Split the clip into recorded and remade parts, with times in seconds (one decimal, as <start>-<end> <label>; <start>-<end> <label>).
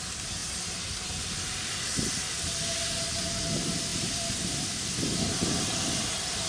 0.0-0.4 recorded; 0.4-1.8 remade; 1.8-3.9 recorded; 3.9-6.1 remade; 6.1-6.5 recorded